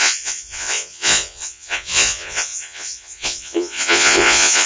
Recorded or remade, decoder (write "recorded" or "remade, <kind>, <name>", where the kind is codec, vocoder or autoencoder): remade, vocoder, Vocos